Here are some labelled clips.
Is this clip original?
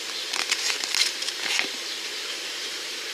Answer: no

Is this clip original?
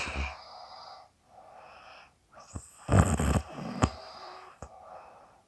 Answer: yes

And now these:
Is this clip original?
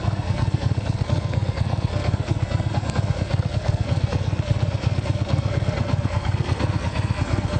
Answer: no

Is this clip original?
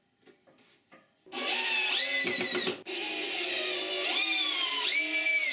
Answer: yes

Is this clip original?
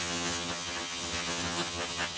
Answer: no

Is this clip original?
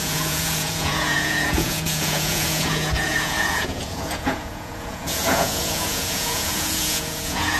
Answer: no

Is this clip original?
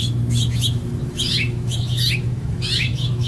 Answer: no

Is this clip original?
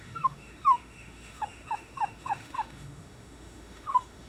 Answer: no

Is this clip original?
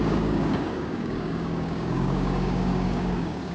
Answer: no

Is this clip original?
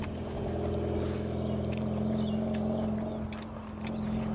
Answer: yes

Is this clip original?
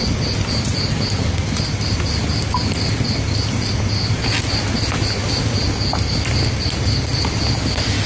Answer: yes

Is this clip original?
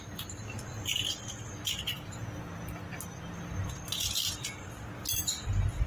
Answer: yes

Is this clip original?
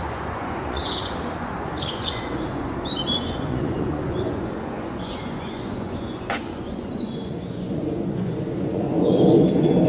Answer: no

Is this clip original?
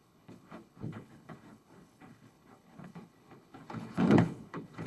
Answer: no